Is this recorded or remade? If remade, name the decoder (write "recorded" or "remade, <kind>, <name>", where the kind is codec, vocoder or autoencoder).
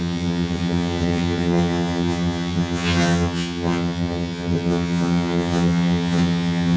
remade, vocoder, HiFi-GAN